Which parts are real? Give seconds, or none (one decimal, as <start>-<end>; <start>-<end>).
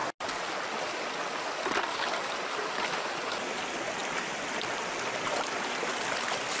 0.0-6.6